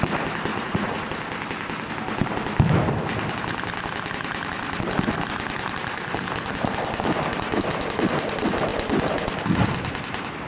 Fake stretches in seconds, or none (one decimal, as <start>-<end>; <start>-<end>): 0.5-1.1